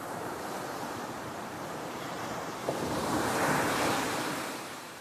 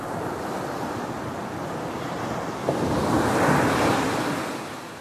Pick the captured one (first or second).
second